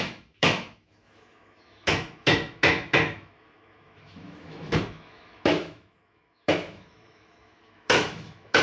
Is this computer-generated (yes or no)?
yes